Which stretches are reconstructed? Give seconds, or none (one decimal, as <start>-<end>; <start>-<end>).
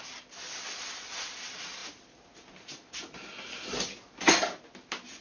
none